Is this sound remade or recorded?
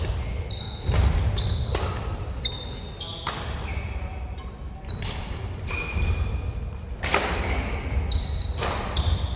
recorded